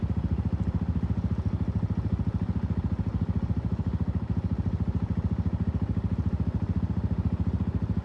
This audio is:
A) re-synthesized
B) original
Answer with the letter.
B